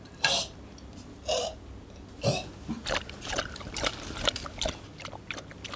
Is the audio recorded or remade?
recorded